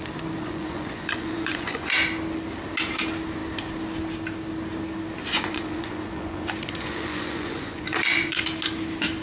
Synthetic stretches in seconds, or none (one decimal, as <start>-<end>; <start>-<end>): 0.4-1.9; 5.3-8.4